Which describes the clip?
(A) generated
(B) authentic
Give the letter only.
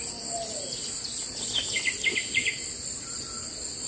B